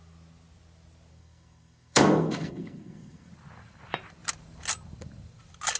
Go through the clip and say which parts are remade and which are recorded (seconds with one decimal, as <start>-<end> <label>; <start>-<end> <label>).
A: 0.0-1.1 recorded; 1.1-3.3 remade; 3.3-5.8 recorded